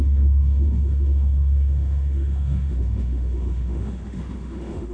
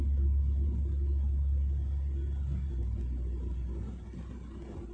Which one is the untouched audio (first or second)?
second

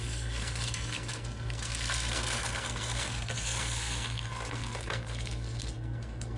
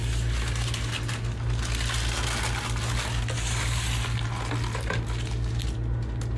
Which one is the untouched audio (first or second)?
second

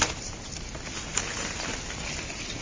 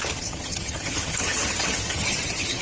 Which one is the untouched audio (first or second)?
first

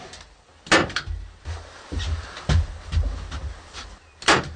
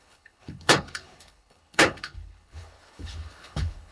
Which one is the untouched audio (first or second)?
first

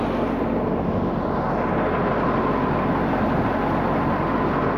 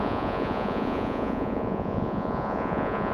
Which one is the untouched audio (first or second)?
first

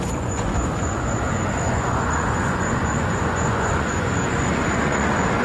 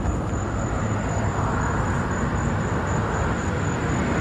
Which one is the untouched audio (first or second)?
second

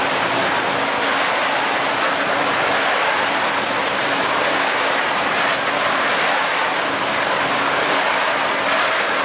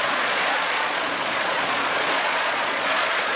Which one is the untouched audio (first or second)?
first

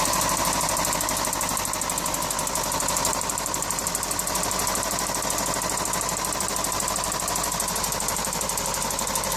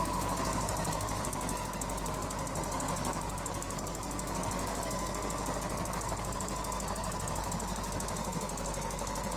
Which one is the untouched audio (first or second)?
first